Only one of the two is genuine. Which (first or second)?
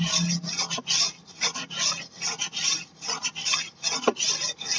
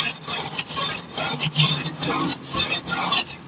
first